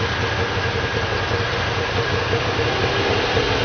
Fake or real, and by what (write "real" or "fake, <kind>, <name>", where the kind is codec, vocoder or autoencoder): real